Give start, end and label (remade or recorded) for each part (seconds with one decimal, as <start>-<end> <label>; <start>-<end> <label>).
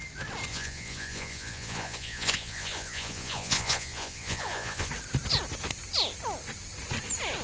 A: 0.0-0.5 recorded; 0.5-4.9 remade; 4.9-7.4 recorded